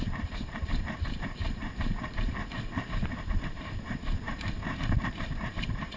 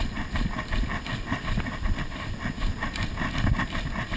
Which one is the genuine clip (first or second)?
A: second